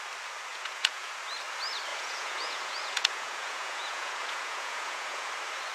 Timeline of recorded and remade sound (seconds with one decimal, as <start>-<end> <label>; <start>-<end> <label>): 0.0-0.5 recorded; 0.5-1.1 remade; 1.1-1.9 recorded; 1.9-5.3 remade; 5.3-5.7 recorded